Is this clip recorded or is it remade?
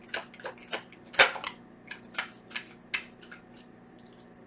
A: recorded